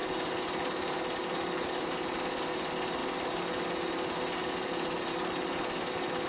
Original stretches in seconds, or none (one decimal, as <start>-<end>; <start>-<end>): 0.0-6.3